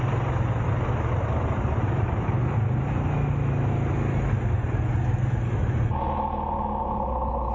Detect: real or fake real